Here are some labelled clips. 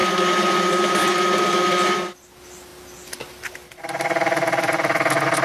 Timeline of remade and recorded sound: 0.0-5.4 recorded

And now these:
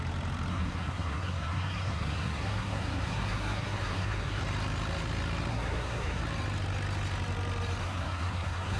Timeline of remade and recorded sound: 0.0-0.5 recorded; 0.5-4.4 remade; 4.4-5.5 recorded; 5.5-6.2 remade; 6.2-7.8 recorded; 7.8-8.8 remade